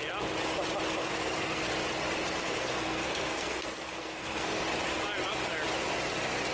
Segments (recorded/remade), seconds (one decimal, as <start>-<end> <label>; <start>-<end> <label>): 0.0-1.0 recorded; 1.0-1.7 remade; 1.7-2.4 recorded; 2.4-4.6 remade; 4.6-6.5 recorded